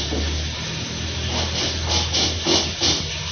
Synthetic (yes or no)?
no